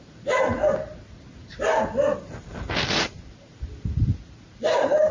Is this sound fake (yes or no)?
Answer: no